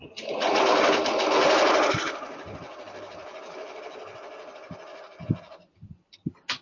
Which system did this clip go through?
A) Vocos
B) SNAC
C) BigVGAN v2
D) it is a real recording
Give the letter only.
D